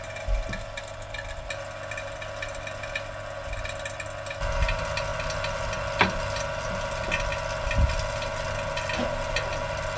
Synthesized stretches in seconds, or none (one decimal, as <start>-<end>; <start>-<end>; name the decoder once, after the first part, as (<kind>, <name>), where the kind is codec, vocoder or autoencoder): none